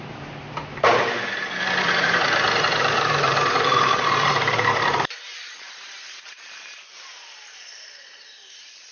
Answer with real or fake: fake